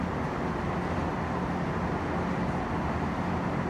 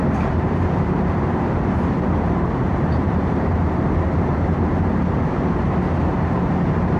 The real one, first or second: first